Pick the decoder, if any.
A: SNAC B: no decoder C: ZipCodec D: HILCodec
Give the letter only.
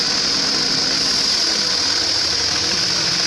B